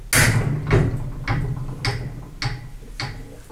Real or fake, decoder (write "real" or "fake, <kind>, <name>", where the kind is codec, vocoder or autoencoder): real